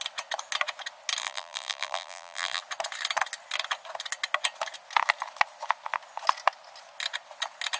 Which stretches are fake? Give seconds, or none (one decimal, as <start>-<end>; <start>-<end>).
1.2-2.6